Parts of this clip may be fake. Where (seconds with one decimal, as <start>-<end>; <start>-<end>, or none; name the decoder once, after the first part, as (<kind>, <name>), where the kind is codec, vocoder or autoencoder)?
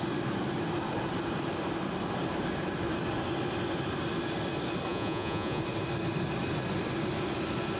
4.9-5.6 (vocoder, Vocos)